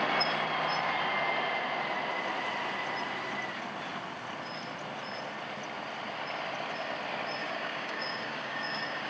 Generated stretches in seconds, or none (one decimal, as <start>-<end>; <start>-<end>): 7.4-9.1